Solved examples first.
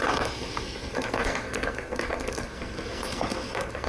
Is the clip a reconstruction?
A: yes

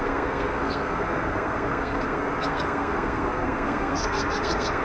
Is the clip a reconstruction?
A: yes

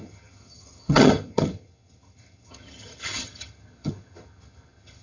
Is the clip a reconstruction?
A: yes